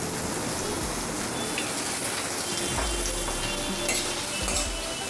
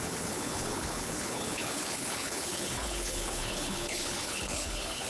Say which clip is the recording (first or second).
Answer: first